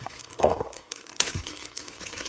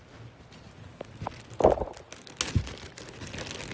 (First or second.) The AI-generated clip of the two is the first